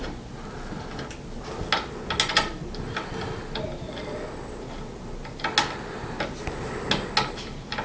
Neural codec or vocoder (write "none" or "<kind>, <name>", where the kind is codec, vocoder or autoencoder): none